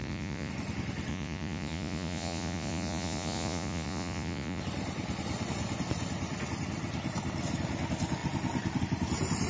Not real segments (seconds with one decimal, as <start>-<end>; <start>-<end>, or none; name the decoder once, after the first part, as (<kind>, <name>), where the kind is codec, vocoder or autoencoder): 0.0-0.5 (vocoder, Vocos); 1.1-4.6

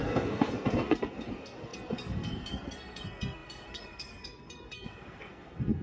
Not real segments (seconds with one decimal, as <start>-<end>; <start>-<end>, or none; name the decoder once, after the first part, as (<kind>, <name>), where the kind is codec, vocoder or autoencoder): 0.0-5.8 (codec, SNAC)